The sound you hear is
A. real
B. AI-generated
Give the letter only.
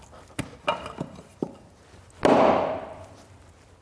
A